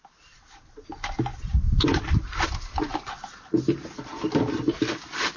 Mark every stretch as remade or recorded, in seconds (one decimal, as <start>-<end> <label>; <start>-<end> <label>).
0.0-2.9 recorded; 2.9-5.4 remade